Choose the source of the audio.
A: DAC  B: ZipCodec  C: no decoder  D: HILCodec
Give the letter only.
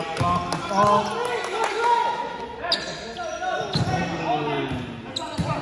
C